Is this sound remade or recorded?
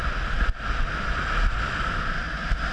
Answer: recorded